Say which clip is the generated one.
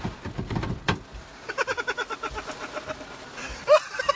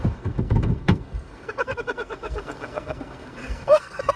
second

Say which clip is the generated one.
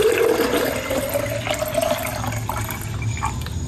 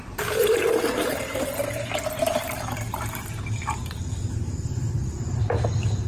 second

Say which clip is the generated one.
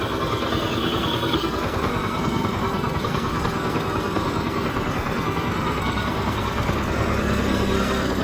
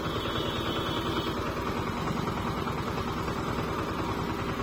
first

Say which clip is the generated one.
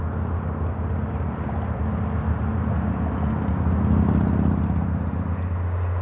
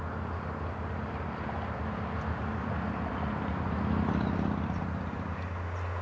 second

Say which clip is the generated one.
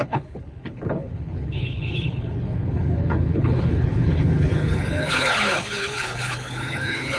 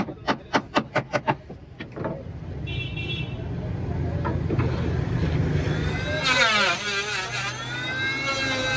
first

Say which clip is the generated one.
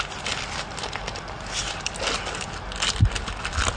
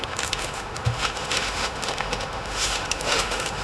second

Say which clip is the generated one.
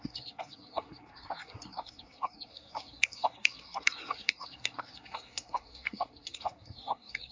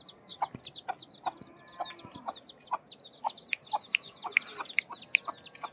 first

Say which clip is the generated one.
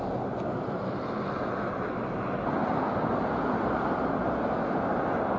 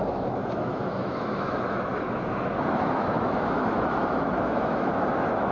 second